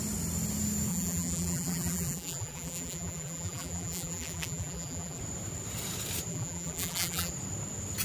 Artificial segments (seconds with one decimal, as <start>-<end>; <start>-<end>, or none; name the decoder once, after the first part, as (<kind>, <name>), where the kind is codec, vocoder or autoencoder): 0.9-5.2 (vocoder, BigVGAN v2); 6.3-7.3

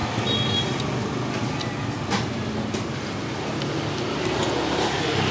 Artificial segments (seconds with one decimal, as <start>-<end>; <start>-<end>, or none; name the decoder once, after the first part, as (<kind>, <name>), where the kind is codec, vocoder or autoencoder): none

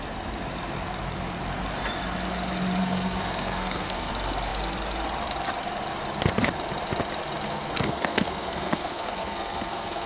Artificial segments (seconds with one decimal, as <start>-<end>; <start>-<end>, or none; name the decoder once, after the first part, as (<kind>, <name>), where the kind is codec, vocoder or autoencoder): 2.8-4.1 (codec, SNAC); 7.5-10.1

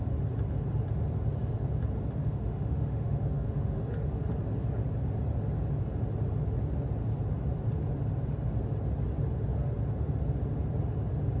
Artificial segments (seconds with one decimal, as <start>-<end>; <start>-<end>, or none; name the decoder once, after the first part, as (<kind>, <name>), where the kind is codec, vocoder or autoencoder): 2.2-3.9 (autoencoder, DAC-VAE)